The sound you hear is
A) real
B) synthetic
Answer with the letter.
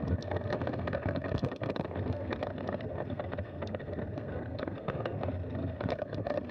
B